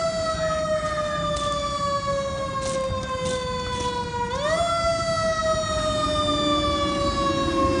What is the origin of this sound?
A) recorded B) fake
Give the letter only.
A